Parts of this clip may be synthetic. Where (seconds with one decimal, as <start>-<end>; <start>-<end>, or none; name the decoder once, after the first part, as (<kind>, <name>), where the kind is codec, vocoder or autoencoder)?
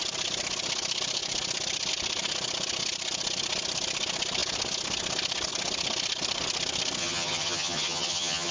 7.0-8.5 (vocoder, HiFi-GAN)